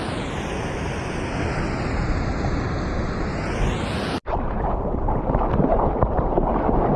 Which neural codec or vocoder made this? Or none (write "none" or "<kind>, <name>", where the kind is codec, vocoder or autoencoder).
none